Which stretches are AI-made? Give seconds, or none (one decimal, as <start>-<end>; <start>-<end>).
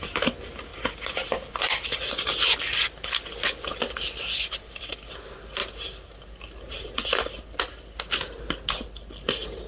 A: none